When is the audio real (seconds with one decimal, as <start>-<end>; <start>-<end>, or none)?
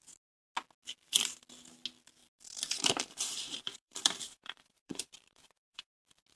0.0-2.2; 6.0-6.4